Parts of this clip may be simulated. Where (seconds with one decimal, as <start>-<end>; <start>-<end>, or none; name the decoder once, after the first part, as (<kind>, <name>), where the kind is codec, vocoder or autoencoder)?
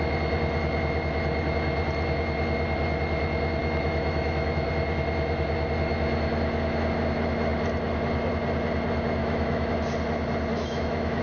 3.6-4.7 (autoencoder, DAC-VAE); 9.2-9.7; 10.5-11.2